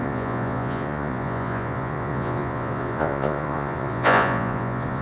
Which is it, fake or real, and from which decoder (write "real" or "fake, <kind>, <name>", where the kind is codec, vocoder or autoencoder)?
fake, vocoder, Vocos